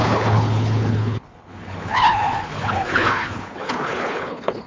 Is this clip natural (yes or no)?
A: no